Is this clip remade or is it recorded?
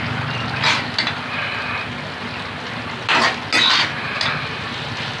recorded